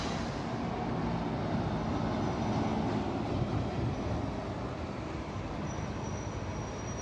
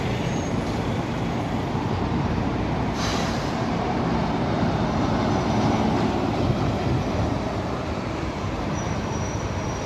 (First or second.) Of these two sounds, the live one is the first